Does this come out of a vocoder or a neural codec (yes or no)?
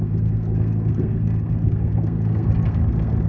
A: yes